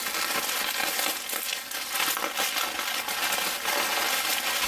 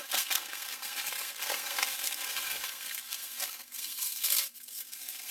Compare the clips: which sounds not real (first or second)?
second